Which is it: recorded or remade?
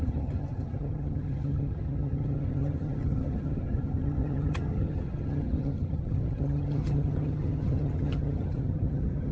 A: remade